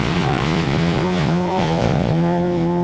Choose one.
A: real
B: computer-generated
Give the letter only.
B